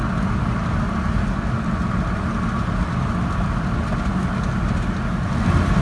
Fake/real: real